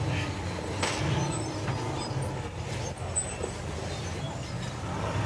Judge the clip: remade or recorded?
recorded